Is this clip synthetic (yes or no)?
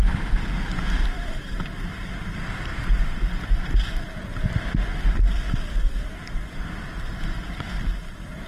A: no